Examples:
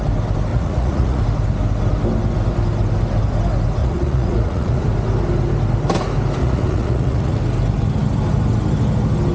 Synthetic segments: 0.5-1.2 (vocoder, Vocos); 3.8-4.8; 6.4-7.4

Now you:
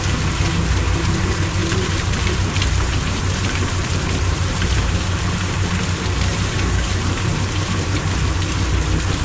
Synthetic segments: 1.6-5.7 (vocoder, BigVGAN v2); 6.3-8.0